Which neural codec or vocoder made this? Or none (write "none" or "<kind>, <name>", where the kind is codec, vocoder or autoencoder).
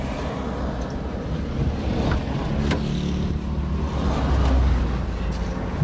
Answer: none